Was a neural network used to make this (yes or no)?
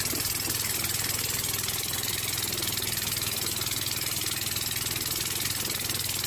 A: no